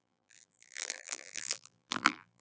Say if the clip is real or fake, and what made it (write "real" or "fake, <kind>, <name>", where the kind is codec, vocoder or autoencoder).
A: fake, vocoder, BigVGAN v2